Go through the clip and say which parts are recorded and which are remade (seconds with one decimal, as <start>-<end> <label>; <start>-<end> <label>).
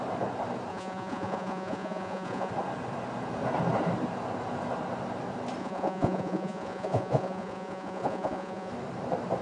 0.0-0.7 recorded; 0.7-2.5 remade; 2.5-5.6 recorded; 5.6-8.7 remade; 8.7-9.4 recorded